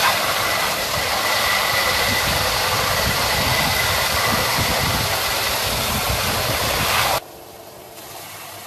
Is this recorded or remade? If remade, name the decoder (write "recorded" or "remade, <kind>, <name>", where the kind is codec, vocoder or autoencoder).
remade, vocoder, BigVGAN v2